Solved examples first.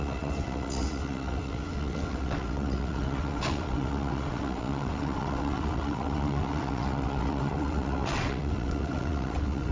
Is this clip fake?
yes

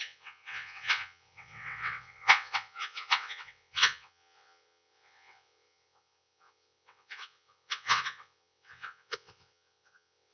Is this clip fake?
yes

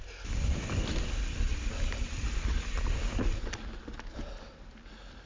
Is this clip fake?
no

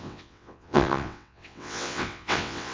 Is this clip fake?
yes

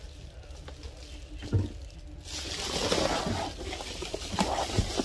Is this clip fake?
no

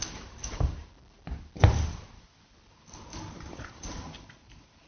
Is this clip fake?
no